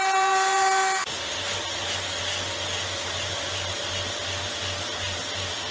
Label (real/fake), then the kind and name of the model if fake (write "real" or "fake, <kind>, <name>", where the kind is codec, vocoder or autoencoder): real